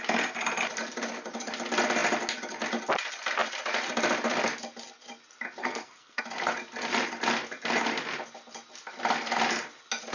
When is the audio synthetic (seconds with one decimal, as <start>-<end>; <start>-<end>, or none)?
5.6-6.2